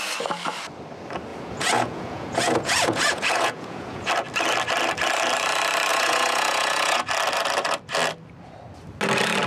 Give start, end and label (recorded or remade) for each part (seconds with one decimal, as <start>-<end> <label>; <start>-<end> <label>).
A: 0.0-1.3 recorded; 1.3-4.1 remade; 4.1-5.9 recorded; 5.9-7.0 remade; 7.0-9.5 recorded